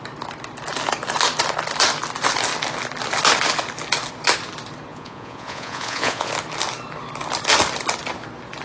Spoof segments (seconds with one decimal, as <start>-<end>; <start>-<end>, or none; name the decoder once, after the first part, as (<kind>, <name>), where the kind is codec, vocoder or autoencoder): 4.9-6.3 (vocoder, Vocos)